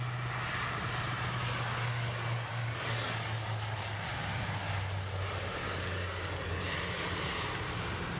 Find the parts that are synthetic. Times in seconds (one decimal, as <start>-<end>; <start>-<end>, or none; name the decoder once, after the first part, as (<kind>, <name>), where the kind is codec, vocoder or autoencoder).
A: 1.4-4.0 (codec, DAC); 5.6-6.6